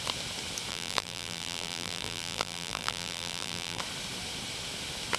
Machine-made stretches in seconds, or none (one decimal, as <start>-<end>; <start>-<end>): 0.7-3.8